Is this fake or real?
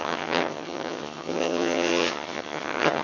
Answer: fake